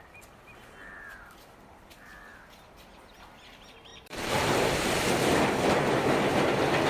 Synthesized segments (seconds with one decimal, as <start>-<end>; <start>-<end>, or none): 3.9-5.5